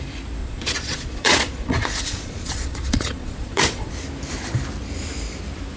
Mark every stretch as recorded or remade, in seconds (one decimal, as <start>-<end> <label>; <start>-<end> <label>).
0.0-0.4 recorded; 0.4-3.9 remade; 3.9-5.8 recorded